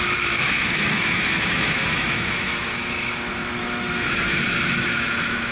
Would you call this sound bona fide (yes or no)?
no